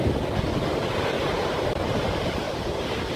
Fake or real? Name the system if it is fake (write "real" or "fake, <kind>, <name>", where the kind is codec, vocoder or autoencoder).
fake, vocoder, BigVGAN v2